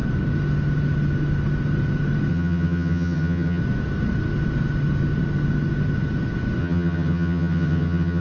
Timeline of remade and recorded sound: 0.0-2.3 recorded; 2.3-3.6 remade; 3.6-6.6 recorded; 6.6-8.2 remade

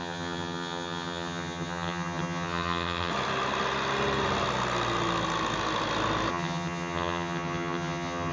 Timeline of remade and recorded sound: 0.0-3.1 remade; 3.1-6.3 recorded; 6.3-8.3 remade

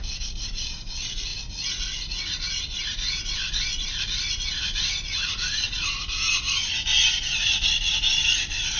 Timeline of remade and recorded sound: 0.0-8.8 recorded

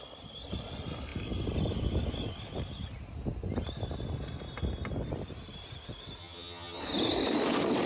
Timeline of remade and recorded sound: 0.0-6.2 recorded; 6.2-6.8 remade; 6.8-7.9 recorded

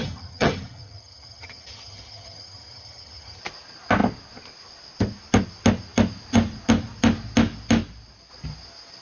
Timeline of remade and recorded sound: 0.0-3.4 remade; 3.4-9.0 recorded